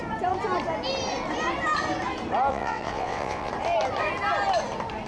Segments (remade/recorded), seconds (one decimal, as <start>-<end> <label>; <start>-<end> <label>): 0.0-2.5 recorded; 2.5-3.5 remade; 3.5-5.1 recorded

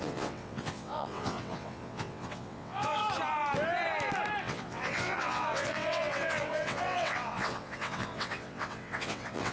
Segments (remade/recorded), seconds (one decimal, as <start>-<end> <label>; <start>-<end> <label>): 0.0-3.0 remade; 3.0-4.4 recorded; 4.4-9.5 remade

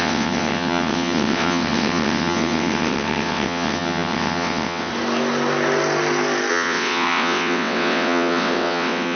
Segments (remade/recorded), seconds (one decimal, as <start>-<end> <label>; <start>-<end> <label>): 0.0-4.9 remade; 4.9-6.5 recorded; 6.5-9.2 remade